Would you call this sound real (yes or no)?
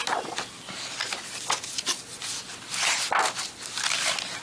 yes